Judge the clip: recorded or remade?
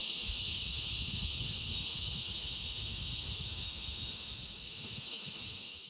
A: remade